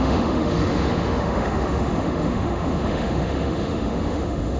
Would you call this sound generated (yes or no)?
yes